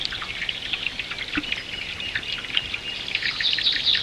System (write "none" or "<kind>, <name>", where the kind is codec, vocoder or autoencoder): none